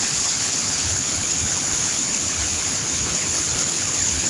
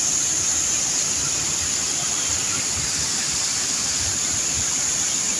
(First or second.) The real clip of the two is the second